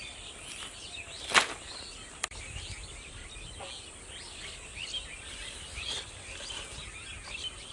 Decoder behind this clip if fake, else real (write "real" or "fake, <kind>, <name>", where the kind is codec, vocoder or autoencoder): real